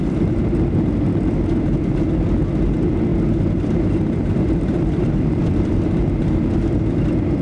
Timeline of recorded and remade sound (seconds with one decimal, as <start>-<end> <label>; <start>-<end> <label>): 0.0-3.1 recorded; 3.1-5.8 remade; 5.8-7.4 recorded

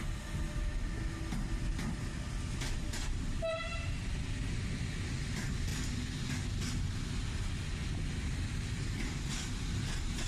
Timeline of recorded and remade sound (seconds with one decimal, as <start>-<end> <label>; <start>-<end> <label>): 0.0-10.3 recorded

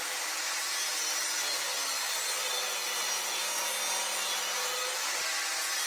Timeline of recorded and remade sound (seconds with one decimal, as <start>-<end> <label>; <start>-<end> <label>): 0.0-2.5 recorded; 2.5-3.4 remade; 3.4-5.9 recorded

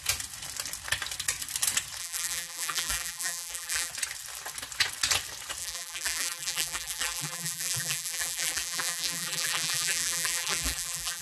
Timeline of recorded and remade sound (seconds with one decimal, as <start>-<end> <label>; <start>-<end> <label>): 0.0-2.0 recorded; 2.0-3.9 remade; 3.9-5.6 recorded; 5.6-11.2 remade

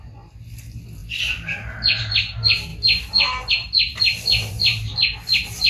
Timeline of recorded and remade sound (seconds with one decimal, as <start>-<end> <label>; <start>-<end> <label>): 0.0-3.9 recorded; 3.9-4.5 remade; 4.5-5.7 recorded

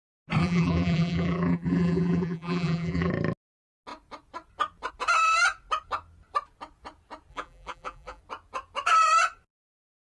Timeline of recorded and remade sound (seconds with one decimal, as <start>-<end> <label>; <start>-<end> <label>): 0.0-0.4 recorded; 0.4-3.1 remade; 3.1-7.3 recorded; 7.3-8.2 remade; 8.2-10.0 recorded

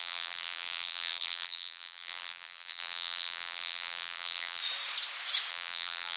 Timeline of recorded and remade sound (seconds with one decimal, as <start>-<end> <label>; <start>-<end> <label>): 0.0-4.6 remade; 4.6-5.5 recorded; 5.5-6.2 remade

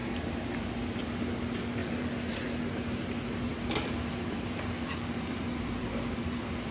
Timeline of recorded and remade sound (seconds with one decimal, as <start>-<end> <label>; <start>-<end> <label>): 0.0-1.8 recorded; 1.8-2.4 remade; 2.4-3.5 recorded; 3.5-6.7 remade